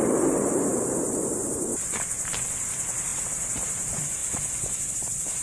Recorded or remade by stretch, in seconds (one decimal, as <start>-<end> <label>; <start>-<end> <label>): 0.0-1.7 remade; 1.7-2.6 recorded; 2.6-4.2 remade; 4.2-4.9 recorded; 4.9-5.4 remade

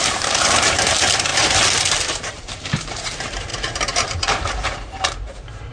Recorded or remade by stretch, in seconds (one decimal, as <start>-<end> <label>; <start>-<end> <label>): 0.0-5.7 remade

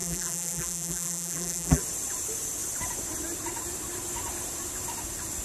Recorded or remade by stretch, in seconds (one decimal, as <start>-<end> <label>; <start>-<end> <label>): 0.0-1.8 remade; 1.8-5.4 recorded

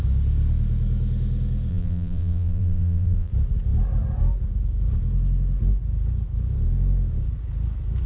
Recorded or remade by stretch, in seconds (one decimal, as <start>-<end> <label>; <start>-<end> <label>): 0.0-1.7 recorded; 1.7-3.3 remade; 3.3-8.1 recorded

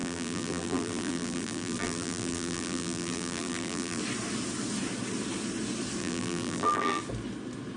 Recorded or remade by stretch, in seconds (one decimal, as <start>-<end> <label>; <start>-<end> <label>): 0.0-4.0 remade; 4.0-6.0 recorded; 6.0-7.0 remade; 7.0-7.8 recorded